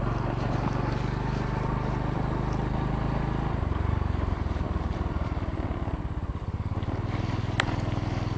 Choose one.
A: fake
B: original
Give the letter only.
B